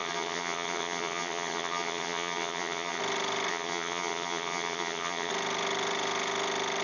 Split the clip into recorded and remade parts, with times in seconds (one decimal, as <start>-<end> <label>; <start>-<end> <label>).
0.0-3.0 remade; 3.0-3.5 recorded; 3.5-5.3 remade; 5.3-6.8 recorded